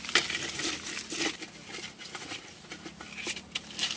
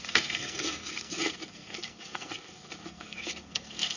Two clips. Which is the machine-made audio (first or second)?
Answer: second